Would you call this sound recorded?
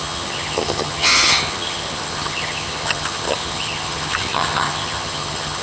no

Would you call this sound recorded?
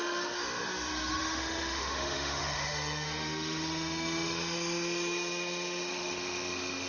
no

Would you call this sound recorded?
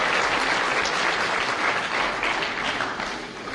yes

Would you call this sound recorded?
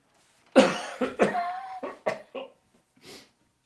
yes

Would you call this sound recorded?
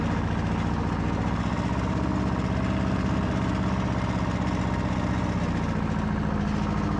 yes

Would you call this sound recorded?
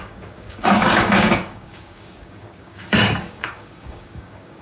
no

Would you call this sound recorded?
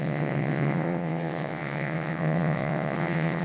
no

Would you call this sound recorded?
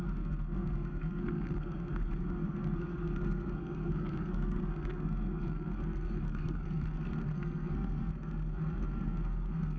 no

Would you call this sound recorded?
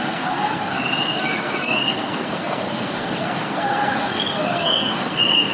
no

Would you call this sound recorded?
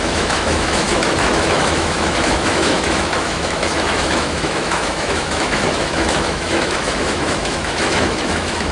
no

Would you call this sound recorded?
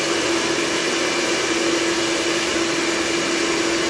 yes